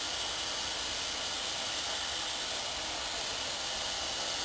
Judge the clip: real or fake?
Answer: real